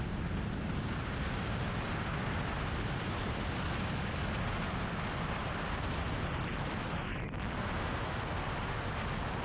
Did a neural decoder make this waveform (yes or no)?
no